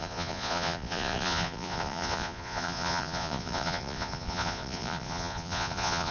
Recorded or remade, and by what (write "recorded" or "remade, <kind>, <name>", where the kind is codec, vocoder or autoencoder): remade, vocoder, Vocos